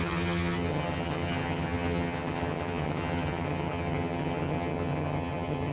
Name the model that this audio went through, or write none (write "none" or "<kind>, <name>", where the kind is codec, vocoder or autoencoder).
vocoder, HiFi-GAN